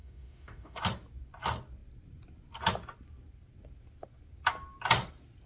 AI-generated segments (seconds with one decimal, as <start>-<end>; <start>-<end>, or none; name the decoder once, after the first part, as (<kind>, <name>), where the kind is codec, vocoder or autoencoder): 0.0-0.8 (autoencoder, DAC-VAE)